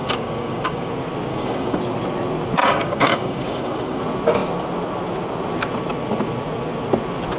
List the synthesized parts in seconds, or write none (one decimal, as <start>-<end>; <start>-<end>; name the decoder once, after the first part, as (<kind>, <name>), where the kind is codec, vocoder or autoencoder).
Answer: 0.0-0.9 (codec, DAC); 1.3-1.8; 2.6-4.0